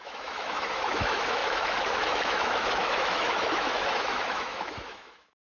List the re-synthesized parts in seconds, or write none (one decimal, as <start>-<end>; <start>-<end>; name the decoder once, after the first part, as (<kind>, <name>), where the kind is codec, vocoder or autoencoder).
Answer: 0.0-5.4 (autoencoder, DAC-VAE)